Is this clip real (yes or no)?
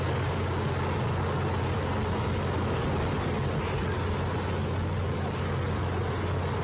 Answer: yes